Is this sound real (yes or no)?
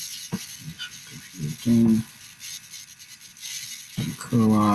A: yes